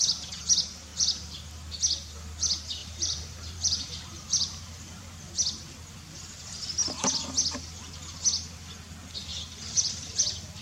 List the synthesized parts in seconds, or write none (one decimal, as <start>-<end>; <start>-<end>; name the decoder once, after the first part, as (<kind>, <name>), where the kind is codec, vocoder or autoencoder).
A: 2.8-5.0 (vocoder, BigVGAN v2); 9.3-10.1

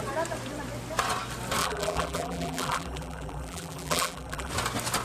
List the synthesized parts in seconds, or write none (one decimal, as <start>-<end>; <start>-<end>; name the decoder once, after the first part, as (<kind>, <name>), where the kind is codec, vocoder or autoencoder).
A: 1.6-4.5 (vocoder, BigVGAN v2)

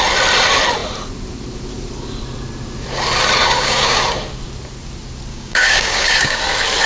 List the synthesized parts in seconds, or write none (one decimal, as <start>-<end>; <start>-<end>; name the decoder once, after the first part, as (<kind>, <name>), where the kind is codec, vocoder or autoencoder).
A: 3.4-4.0 (codec, DAC); 5.3-6.4

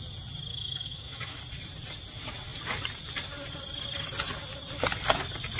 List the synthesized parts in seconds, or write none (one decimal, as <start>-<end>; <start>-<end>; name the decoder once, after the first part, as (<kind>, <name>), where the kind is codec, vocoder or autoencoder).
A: 0.5-1.4 (autoencoder, DAC-VAE)

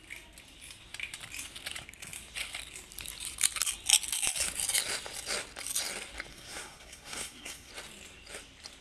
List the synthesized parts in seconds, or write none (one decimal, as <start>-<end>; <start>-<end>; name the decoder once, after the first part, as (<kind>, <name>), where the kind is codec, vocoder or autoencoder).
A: 6.3-7.7 (codec, SNAC)

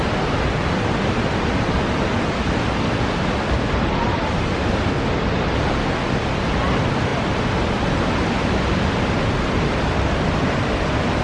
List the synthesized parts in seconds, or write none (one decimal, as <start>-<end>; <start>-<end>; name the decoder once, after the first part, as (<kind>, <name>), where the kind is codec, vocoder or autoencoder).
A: none

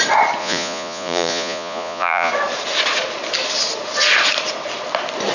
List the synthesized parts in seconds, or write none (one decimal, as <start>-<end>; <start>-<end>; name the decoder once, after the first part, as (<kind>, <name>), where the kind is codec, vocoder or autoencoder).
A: 0.4-2.3 (vocoder, Vocos)